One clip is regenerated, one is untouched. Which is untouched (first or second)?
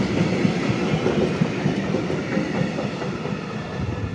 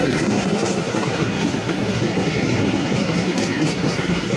first